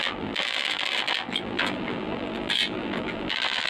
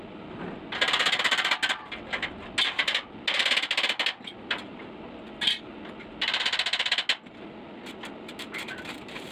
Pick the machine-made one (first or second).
first